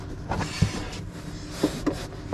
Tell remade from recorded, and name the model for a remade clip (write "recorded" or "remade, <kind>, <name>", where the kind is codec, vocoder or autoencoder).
recorded